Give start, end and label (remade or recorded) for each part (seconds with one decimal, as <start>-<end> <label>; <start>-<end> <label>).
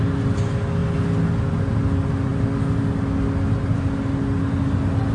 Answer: 0.0-5.1 recorded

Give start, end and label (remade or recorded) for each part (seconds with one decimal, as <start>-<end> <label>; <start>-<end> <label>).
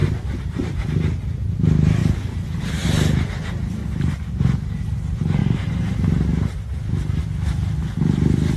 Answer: 0.0-1.1 remade; 1.1-2.0 recorded; 2.0-2.6 remade; 2.6-3.8 recorded; 3.8-4.8 remade; 4.8-5.4 recorded; 5.4-7.2 remade; 7.2-8.6 recorded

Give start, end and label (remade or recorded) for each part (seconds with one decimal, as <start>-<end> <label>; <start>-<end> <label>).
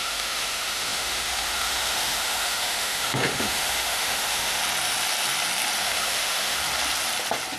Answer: 0.0-4.6 remade; 4.6-5.8 recorded; 5.8-6.6 remade; 6.6-7.6 recorded